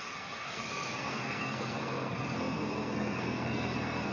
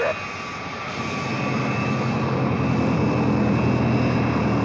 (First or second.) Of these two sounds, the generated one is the first